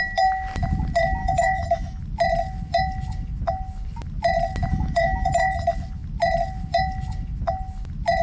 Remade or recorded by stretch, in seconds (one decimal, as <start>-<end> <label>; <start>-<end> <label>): 0.0-1.2 recorded; 1.2-2.0 remade; 2.0-4.7 recorded; 4.7-5.3 remade; 5.3-8.2 recorded